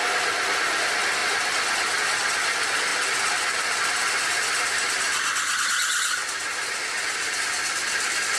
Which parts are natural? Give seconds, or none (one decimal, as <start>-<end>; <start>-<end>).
0.0-8.4